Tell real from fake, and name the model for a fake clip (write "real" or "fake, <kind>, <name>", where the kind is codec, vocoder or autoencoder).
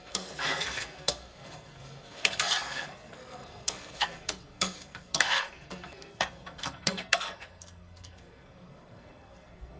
fake, codec, SNAC